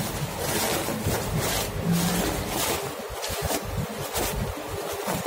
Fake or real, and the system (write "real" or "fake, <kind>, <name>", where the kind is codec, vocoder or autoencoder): real